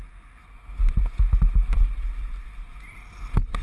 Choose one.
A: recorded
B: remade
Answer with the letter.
A